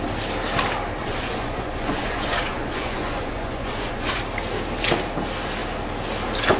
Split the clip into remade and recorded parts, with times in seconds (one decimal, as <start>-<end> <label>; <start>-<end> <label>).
0.0-1.0 recorded; 1.0-4.2 remade; 4.2-6.6 recorded